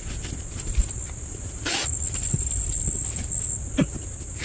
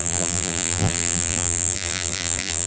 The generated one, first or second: second